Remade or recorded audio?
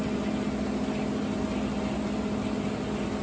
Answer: recorded